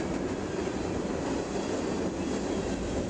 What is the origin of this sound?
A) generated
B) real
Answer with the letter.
B